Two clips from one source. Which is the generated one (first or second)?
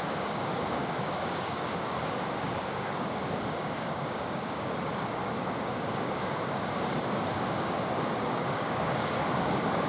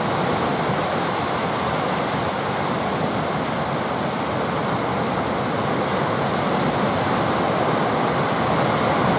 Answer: first